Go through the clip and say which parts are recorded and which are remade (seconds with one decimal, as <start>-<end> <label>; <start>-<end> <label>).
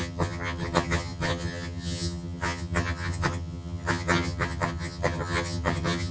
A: 0.0-6.1 remade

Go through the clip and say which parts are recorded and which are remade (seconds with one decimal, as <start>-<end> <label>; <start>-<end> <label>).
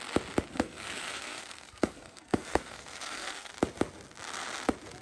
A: 0.0-0.5 recorded; 0.5-3.5 remade; 3.5-5.0 recorded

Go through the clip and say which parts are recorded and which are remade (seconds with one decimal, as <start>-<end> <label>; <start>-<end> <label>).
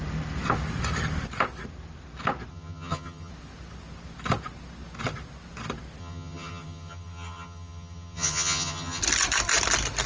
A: 0.0-2.5 recorded; 2.5-3.3 remade; 3.3-6.0 recorded; 6.0-9.0 remade; 9.0-10.1 recorded